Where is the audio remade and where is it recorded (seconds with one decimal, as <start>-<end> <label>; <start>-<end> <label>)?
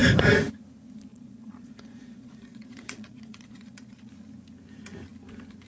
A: 0.0-1.1 recorded; 1.1-4.1 remade; 4.1-5.7 recorded